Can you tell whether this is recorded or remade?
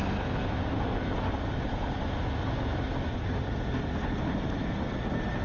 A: recorded